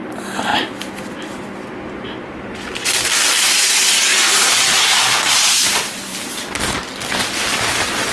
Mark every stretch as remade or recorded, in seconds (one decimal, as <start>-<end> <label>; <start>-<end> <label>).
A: 0.0-4.1 recorded; 4.1-6.6 remade; 6.6-8.1 recorded